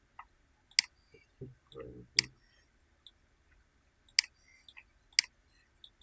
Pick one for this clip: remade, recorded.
recorded